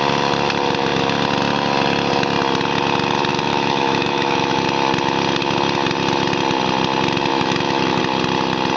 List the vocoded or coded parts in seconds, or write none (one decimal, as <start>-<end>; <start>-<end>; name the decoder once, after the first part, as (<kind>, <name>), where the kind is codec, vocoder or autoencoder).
3.3-4.6 (autoencoder, DAC-VAE); 7.3-8.0